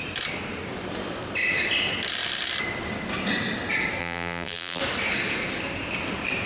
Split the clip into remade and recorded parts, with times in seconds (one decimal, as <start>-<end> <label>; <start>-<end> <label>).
0.0-4.0 recorded; 4.0-4.8 remade; 4.8-6.5 recorded